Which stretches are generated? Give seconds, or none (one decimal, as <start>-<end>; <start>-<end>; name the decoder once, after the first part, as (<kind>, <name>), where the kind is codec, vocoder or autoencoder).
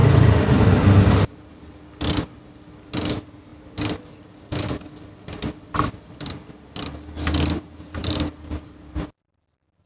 0.0-1.1 (vocoder, BigVGAN v2); 1.5-2.1; 8.0-9.4